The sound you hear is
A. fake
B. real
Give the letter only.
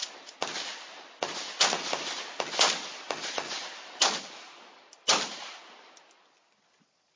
B